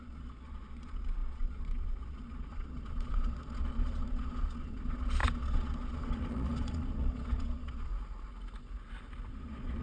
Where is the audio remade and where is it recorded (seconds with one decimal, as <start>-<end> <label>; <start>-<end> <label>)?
0.0-7.9 remade; 7.9-9.3 recorded; 9.3-9.8 remade